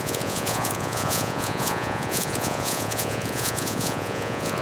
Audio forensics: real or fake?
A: fake